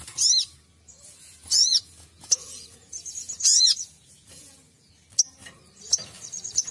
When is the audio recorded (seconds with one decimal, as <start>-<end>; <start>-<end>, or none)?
0.0-0.9; 4.9-6.7